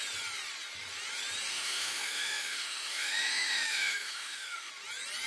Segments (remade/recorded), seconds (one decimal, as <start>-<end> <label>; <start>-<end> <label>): 0.0-1.5 recorded; 1.5-4.7 remade; 4.7-5.3 recorded